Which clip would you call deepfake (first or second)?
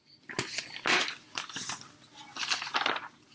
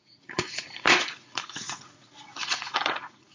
second